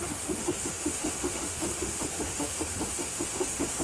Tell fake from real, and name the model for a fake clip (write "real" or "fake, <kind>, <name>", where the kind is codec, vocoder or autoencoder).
fake, autoencoder, DAC-VAE